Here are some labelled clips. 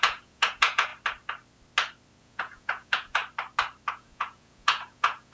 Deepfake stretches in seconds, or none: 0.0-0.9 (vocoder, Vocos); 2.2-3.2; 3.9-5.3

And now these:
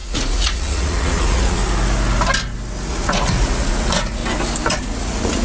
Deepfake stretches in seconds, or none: 0.0-1.6 (vocoder, Vocos); 2.9-4.2; 4.8-5.4